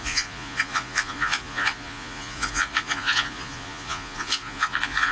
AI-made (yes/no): yes